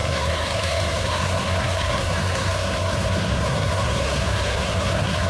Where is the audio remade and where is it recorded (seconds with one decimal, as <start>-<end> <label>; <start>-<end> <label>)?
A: 0.0-5.3 remade